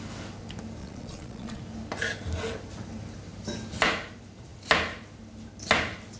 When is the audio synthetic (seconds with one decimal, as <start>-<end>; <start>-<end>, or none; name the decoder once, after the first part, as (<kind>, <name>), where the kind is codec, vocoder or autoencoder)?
0.8-1.6 (vocoder, Vocos)